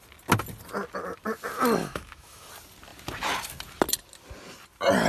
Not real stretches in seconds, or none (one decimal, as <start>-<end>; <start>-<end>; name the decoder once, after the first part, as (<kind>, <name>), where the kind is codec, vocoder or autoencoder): 1.8-2.5 (autoencoder, DAC-VAE)